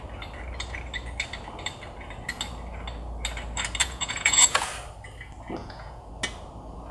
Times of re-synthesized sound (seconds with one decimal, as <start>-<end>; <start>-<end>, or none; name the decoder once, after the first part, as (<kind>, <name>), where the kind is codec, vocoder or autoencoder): 3.8-4.7 (vocoder, Vocos); 5.6-6.1